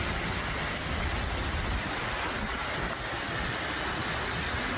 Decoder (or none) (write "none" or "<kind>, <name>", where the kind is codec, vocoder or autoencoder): none